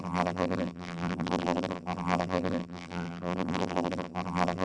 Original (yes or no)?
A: no